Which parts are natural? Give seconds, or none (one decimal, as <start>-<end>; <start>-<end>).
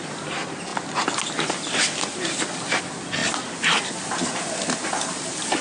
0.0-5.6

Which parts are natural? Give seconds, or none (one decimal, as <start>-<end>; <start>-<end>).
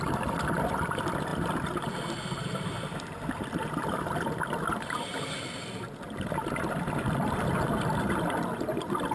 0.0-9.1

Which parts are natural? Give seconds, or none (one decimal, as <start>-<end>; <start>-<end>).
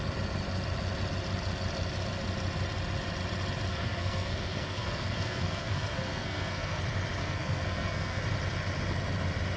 0.0-3.7; 6.8-7.2; 8.2-9.6